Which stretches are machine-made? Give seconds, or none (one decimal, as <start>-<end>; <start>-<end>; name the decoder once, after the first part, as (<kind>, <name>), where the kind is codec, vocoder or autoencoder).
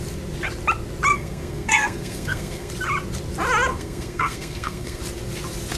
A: 1.1-2.7 (codec, SNAC); 3.7-5.0